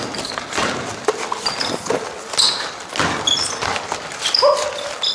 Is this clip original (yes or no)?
yes